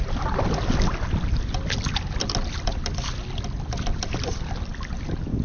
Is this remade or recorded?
recorded